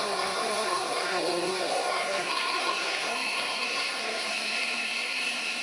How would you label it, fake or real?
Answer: fake